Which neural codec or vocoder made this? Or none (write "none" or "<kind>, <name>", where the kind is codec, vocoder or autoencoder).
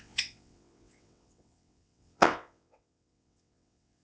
vocoder, WaveNeXt